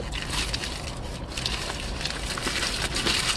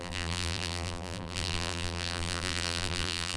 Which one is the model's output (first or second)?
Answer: second